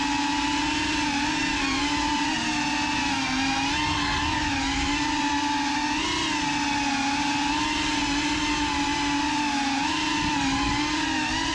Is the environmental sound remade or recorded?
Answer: recorded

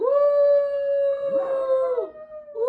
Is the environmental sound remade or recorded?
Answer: recorded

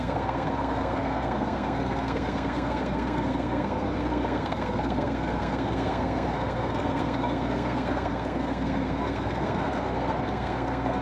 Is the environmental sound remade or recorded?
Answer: remade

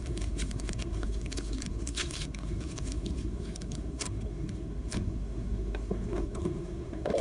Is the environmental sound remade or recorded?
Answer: remade